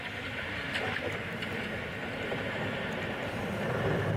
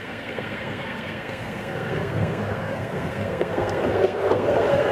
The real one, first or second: first